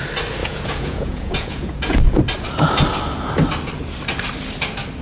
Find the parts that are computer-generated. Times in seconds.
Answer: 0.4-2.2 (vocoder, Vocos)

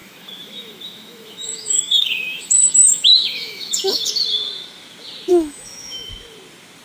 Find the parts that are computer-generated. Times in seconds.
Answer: 0.0-4.1 (autoencoder, DAC-VAE); 5.3-6.1

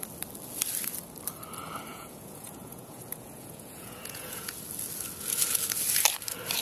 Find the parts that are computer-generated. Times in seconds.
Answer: 1.9-4.6 (vocoder, Vocos)

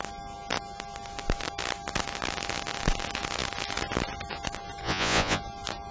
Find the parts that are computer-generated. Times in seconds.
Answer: 4.8-5.4 (vocoder, Vocos)

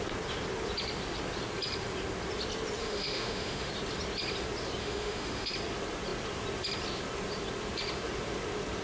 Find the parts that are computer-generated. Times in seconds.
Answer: 2.8-3.7 (autoencoder, DAC-VAE); 4.8-5.5